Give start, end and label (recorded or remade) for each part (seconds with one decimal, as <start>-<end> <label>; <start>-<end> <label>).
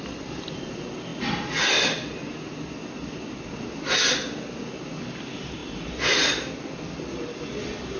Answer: 0.0-8.0 recorded